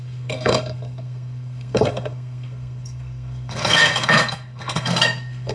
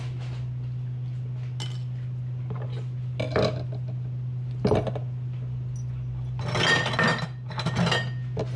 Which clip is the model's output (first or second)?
first